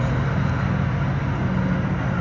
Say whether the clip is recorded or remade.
recorded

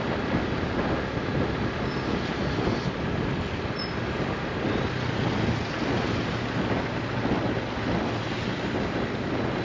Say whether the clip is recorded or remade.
recorded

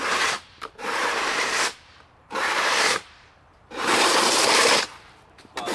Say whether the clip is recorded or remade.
remade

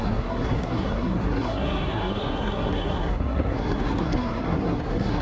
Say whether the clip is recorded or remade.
remade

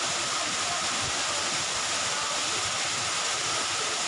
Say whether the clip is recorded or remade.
recorded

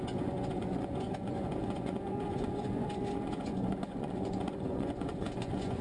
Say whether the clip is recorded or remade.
remade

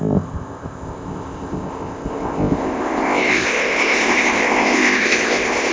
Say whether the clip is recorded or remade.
remade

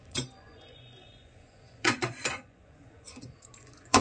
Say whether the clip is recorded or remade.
remade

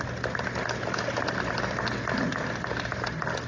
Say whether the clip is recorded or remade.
recorded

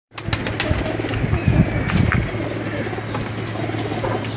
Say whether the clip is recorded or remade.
recorded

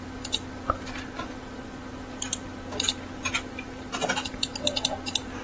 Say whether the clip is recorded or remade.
recorded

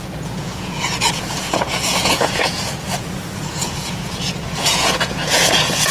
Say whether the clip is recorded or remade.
remade